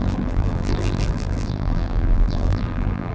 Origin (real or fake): fake